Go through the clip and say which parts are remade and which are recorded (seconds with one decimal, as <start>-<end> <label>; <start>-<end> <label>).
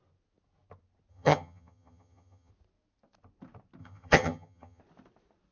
0.0-1.1 recorded; 1.1-2.5 remade; 2.5-3.8 recorded; 3.8-4.8 remade; 4.8-5.5 recorded